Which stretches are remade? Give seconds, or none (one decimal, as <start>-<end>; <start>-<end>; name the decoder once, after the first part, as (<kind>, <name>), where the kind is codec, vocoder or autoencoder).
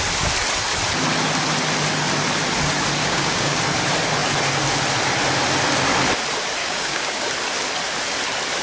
3.0-3.6 (codec, DAC); 6.6-7.3